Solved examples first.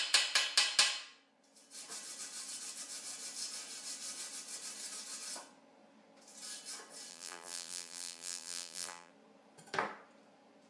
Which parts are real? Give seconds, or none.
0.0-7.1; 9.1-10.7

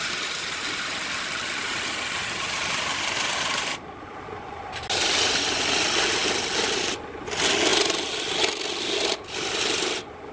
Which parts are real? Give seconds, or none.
0.0-10.3

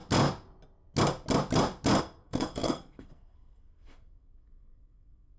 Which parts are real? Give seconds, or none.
0.0-2.0

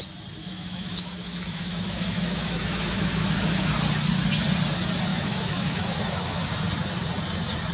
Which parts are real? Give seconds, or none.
0.0-0.4; 3.7-5.1; 6.5-7.7

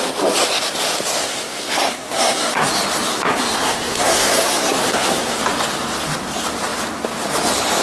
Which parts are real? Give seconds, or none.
0.0-1.2; 2.6-3.1; 5.4-7.8

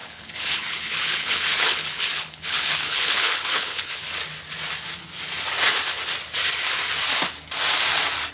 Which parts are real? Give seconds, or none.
4.2-8.3

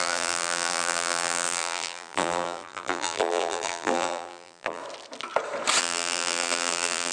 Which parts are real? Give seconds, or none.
4.8-5.8